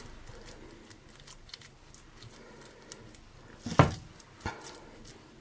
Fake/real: real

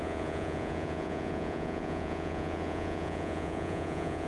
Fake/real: fake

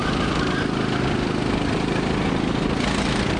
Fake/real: real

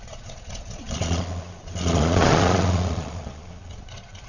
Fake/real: fake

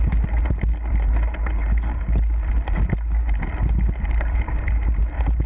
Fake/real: real